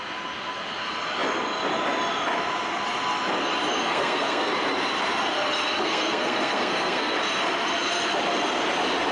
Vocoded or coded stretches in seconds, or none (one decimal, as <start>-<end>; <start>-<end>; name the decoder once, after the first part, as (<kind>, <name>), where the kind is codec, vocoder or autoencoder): 3.8-4.5 (codec, SNAC); 5.8-7.2